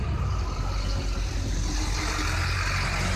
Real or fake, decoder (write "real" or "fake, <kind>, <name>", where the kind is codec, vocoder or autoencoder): real